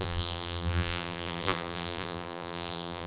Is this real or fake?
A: fake